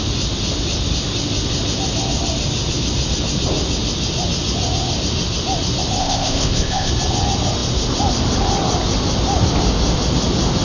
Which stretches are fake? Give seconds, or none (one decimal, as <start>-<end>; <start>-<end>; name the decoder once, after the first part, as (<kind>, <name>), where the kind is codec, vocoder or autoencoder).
6.0-6.9 (codec, ZipCodec)